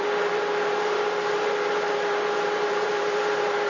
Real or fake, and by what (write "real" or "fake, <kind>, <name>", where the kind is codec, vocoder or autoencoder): fake, vocoder, BigVGAN v2